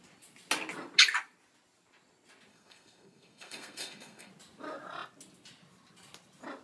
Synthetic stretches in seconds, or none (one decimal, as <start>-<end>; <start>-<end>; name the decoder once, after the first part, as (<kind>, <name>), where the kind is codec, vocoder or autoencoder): 2.5-4.3 (codec, SNAC)